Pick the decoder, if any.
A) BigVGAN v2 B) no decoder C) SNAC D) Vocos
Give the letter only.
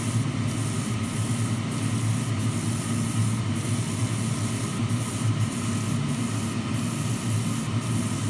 B